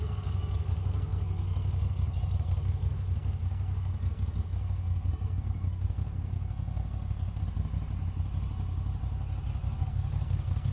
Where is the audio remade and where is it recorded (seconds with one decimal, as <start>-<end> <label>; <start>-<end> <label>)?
0.0-7.4 remade; 7.4-9.8 recorded; 9.8-10.7 remade